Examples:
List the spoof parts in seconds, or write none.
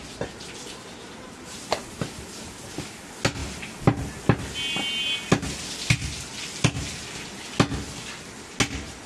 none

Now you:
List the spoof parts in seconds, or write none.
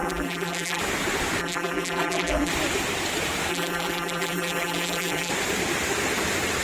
0.0-0.8 (vocoder, BigVGAN v2); 1.4-2.5; 3.5-5.3